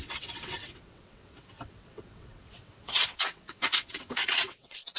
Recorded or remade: remade